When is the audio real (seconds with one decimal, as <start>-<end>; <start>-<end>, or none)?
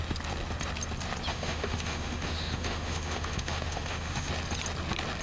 0.0-1.3; 4.3-5.2